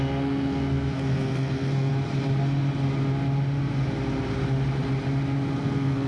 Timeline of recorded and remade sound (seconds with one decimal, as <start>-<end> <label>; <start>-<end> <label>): 0.0-1.9 remade; 1.9-5.6 recorded; 5.6-6.1 remade